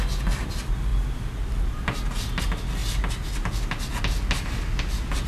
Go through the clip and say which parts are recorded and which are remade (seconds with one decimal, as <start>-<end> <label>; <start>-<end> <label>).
0.0-5.3 recorded